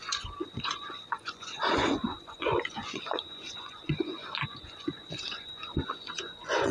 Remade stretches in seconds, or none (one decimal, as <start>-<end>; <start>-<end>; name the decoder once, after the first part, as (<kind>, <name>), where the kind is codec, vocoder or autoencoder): 0.0-6.7 (vocoder, Vocos)